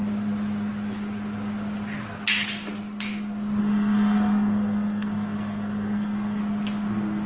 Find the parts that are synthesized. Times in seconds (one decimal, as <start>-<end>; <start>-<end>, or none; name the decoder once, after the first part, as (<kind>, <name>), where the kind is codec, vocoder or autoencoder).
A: 3.6-6.4 (codec, SNAC)